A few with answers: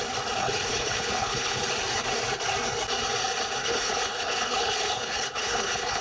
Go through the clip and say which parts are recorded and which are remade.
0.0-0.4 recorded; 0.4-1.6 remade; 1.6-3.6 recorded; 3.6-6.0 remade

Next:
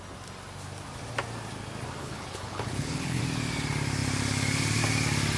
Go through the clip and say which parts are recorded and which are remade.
0.0-2.0 recorded; 2.0-3.2 remade; 3.2-5.4 recorded

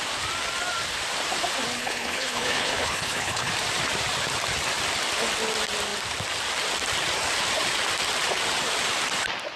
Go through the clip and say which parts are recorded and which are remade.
0.0-1.8 recorded; 1.8-3.5 remade; 3.5-9.6 recorded

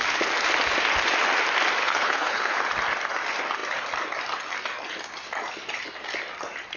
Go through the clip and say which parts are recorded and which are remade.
0.0-1.8 recorded; 1.8-2.6 remade; 2.6-6.8 recorded

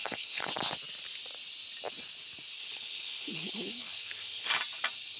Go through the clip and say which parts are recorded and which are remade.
0.0-0.5 remade; 0.5-2.6 recorded; 2.6-4.5 remade; 4.5-5.2 recorded

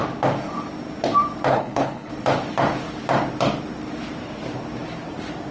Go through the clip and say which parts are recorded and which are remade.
0.0-1.5 recorded; 1.5-2.1 remade; 2.1-5.5 recorded

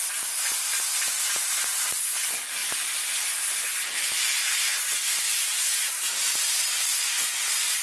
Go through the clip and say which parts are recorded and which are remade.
0.0-7.8 recorded

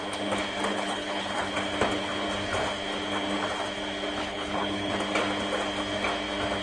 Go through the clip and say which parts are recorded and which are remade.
0.0-0.7 recorded; 0.7-1.5 remade; 1.5-4.2 recorded; 4.2-4.9 remade; 4.9-6.6 recorded